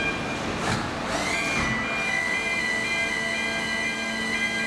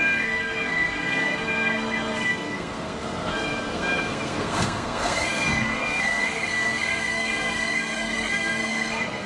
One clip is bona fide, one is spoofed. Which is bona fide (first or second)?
first